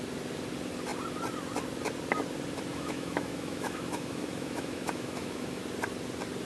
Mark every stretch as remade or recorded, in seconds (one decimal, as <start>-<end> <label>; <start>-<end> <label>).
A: 0.0-2.7 recorded; 2.7-5.6 remade; 5.6-6.4 recorded

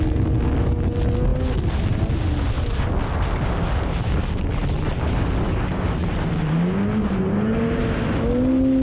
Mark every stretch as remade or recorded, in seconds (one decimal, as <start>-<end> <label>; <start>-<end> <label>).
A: 0.0-8.8 recorded

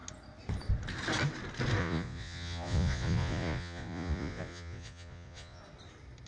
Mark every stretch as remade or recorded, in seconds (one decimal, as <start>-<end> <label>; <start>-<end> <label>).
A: 0.0-1.8 recorded; 1.8-5.6 remade; 5.6-6.3 recorded

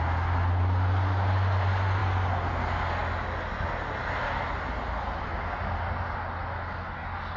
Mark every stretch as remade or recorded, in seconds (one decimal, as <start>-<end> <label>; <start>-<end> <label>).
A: 0.0-7.4 recorded